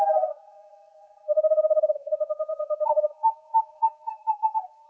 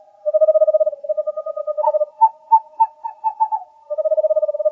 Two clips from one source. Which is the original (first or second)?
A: second